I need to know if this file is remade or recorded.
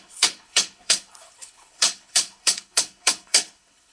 remade